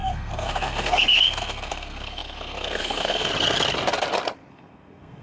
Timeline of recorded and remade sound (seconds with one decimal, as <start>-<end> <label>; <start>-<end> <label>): 0.0-3.3 remade; 3.3-4.5 recorded; 4.5-5.2 remade